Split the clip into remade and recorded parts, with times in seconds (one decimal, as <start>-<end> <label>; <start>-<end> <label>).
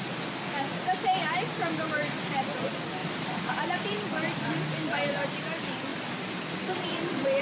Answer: 0.0-3.0 recorded; 3.0-3.5 remade; 3.5-5.9 recorded; 5.9-7.4 remade